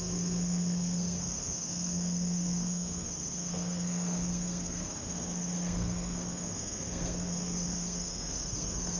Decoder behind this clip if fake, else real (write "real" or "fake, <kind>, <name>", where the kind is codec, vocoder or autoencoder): fake, codec, SNAC